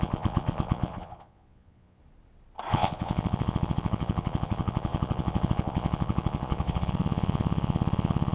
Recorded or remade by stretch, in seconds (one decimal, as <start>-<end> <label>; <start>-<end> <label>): 0.0-2.0 remade; 2.0-2.7 recorded; 2.7-8.3 remade